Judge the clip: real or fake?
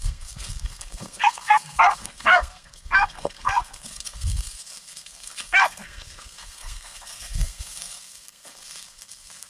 fake